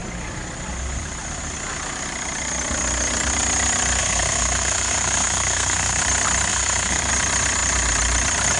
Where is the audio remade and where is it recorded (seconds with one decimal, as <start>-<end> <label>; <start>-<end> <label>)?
0.0-4.0 recorded; 4.0-6.0 remade; 6.0-6.5 recorded; 6.5-7.1 remade; 7.1-8.6 recorded